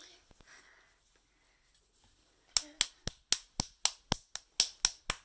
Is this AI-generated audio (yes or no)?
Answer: no